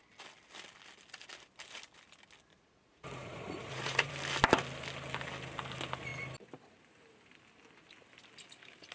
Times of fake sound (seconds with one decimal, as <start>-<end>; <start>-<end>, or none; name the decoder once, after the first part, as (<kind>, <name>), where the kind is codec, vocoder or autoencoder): 2.5-4.1 (vocoder, Vocos)